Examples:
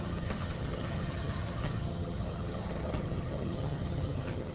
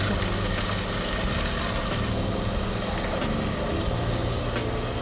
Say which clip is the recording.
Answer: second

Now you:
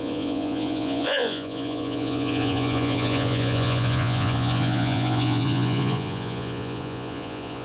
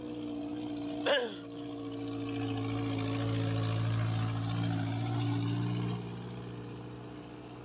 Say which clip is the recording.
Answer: second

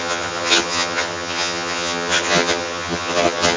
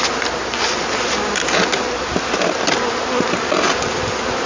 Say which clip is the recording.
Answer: second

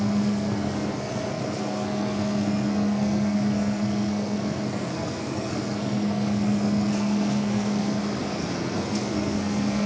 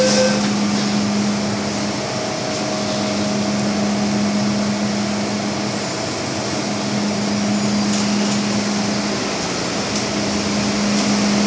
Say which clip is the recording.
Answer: second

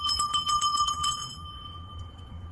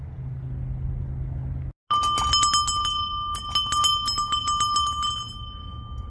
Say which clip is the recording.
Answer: second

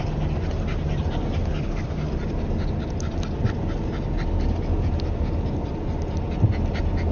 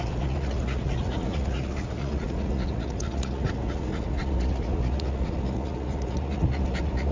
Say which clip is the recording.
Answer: first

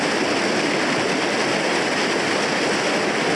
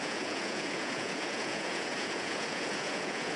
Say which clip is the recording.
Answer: first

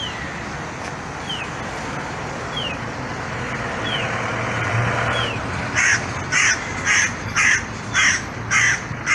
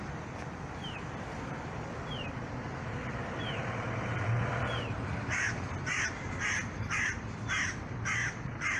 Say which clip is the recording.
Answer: first